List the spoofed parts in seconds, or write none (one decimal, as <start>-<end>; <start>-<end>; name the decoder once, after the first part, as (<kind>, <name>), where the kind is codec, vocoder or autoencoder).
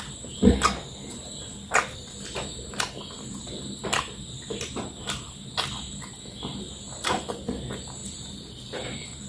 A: none